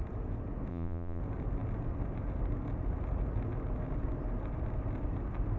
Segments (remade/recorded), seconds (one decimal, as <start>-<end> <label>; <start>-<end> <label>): 0.0-0.7 recorded; 0.7-1.2 remade; 1.2-5.6 recorded